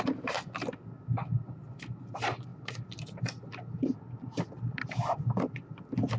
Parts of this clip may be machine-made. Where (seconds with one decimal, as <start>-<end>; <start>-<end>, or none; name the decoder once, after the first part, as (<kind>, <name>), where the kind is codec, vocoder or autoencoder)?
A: none